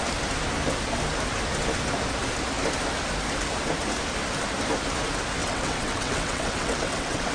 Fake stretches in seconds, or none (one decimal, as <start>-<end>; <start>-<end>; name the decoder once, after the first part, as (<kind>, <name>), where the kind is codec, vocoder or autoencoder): 5.4-7.3 (vocoder, WaveNeXt)